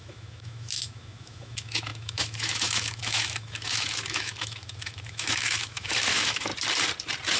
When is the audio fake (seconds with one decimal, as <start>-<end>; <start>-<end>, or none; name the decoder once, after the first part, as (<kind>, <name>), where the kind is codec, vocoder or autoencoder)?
0.0-6.5 (autoencoder, DAC-VAE)